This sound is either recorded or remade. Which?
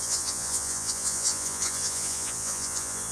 remade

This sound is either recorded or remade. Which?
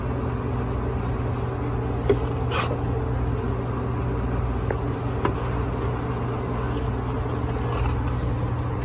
recorded